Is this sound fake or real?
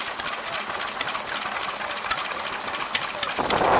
real